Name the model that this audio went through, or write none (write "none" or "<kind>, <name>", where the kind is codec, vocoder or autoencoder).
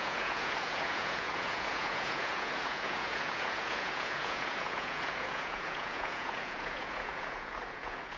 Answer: vocoder, Vocos